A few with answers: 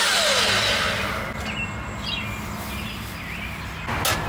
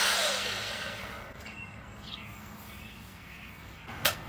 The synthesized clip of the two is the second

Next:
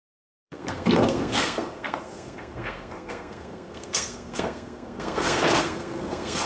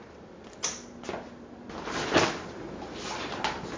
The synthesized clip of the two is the first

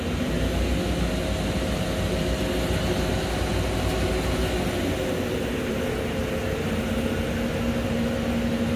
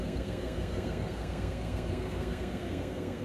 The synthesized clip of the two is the second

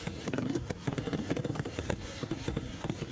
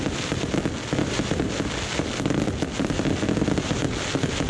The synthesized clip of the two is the first